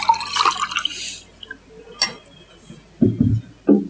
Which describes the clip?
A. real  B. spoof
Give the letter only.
A